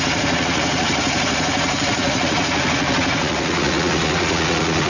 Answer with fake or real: fake